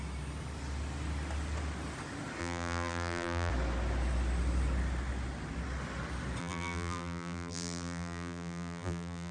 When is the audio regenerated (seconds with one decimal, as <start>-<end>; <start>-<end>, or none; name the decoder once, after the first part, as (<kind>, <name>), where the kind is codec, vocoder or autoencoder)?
2.4-3.5 (vocoder, BigVGAN v2); 6.4-9.3